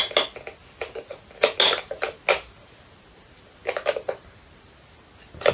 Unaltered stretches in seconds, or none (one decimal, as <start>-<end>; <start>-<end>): 0.0-5.5